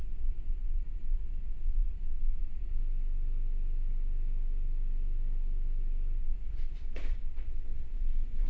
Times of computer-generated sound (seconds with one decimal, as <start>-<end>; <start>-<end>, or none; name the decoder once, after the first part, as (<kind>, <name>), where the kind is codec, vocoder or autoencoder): 0.0-2.8 (vocoder, Vocos); 6.2-8.5

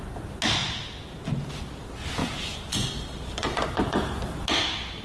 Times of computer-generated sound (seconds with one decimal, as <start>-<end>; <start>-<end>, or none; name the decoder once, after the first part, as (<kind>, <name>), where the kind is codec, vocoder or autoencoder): 2.2-2.9 (vocoder, Vocos); 3.4-4.2

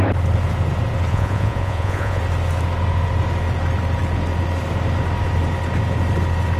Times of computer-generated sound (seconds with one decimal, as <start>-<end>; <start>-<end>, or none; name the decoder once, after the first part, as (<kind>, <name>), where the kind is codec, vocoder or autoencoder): 1.1-2.2 (vocoder, Vocos)

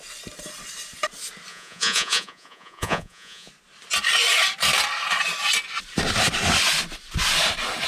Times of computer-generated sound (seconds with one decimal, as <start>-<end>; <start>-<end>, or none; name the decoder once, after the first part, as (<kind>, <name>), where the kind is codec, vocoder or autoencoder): 1.5-3.5 (vocoder, Vocos)

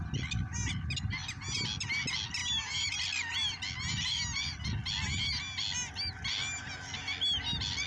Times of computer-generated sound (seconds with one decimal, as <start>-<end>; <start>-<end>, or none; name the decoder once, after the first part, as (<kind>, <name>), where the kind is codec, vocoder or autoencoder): none